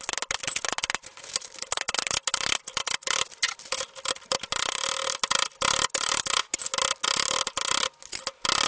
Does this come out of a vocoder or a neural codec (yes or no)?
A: no